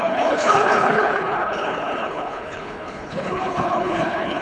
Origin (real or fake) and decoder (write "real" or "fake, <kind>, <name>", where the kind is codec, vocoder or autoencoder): fake, codec, HILCodec